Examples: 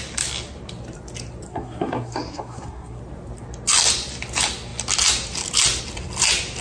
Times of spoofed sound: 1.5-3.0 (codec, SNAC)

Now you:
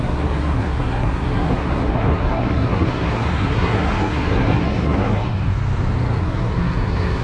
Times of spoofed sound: 0.0-5.5 (codec, SNAC); 6.2-7.2

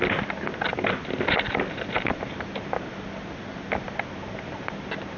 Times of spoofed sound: none

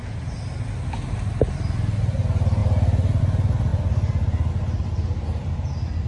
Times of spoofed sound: none

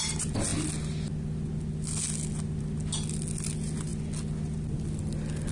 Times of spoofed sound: none

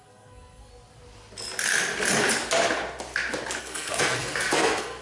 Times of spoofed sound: 0.0-0.7 (codec, SNAC); 3.6-5.0

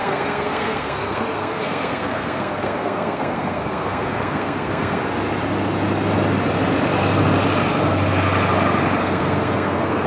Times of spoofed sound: 0.0-5.0 (codec, SNAC); 9.0-10.1